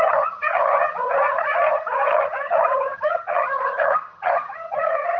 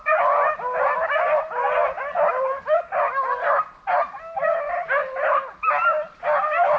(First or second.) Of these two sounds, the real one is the second